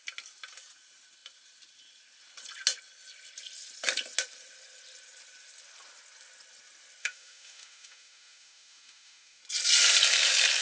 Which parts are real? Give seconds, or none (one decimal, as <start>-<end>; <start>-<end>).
0.0-7.0; 9.4-10.6